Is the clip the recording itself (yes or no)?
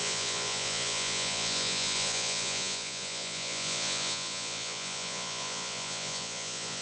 no